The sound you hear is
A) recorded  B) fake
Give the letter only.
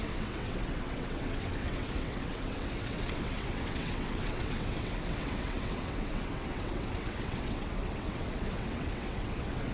B